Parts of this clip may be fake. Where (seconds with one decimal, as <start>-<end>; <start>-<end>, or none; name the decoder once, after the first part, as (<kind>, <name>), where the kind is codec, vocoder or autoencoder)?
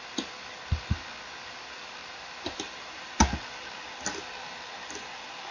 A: 2.0-3.1 (vocoder, BigVGAN v2)